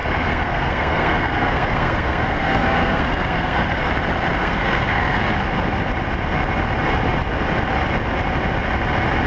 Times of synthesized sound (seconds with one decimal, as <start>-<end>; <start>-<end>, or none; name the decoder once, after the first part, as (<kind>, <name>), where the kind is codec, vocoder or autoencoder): 0.0-3.9 (codec, SNAC); 4.4-5.2